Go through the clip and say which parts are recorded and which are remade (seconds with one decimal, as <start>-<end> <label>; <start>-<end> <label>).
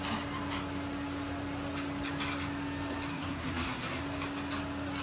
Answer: 0.0-3.1 recorded; 3.1-4.0 remade; 4.0-5.0 recorded